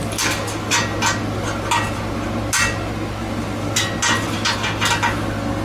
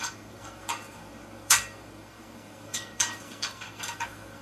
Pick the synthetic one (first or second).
second